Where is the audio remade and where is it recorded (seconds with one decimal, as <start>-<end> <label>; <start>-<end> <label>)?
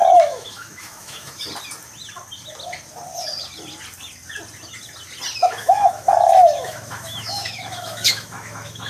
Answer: 0.0-1.4 remade; 1.4-5.4 recorded; 5.4-8.9 remade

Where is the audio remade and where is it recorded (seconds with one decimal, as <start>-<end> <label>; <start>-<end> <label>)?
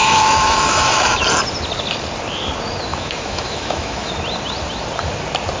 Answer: 0.0-1.2 remade; 1.2-2.9 recorded; 2.9-4.1 remade; 4.1-5.6 recorded